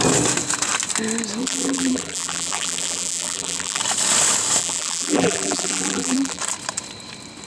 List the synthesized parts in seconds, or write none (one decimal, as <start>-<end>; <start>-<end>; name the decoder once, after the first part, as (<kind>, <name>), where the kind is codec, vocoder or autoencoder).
1.4-3.8 (vocoder, BigVGAN v2); 4.6-6.4